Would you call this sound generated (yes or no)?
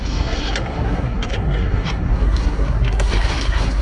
yes